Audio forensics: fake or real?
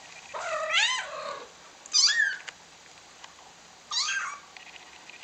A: real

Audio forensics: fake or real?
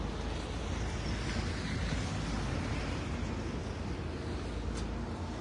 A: real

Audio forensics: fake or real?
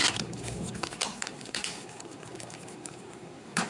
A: fake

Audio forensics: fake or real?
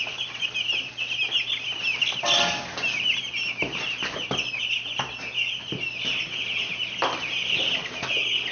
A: real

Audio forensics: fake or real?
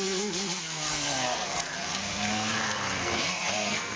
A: fake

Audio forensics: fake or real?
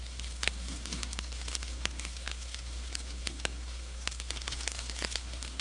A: fake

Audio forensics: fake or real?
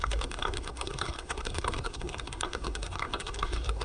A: fake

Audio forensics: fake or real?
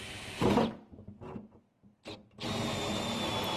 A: real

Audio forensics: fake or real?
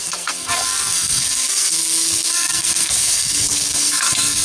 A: fake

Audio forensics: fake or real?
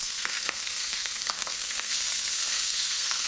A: fake